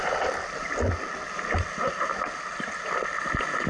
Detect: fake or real real